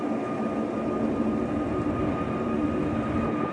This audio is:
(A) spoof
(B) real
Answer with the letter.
B